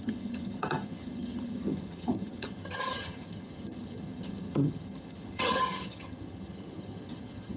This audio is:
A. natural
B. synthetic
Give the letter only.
B